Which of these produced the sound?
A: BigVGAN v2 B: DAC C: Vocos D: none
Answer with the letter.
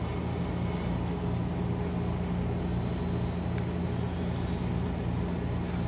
D